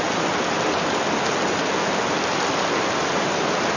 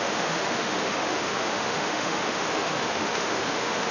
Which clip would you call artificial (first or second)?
second